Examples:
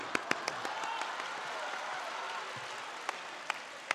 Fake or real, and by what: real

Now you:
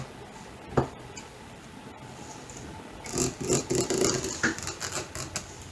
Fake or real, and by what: real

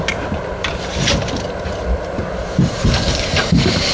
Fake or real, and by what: real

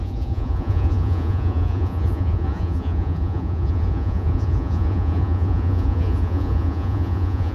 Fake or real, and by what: fake, vocoder, Vocos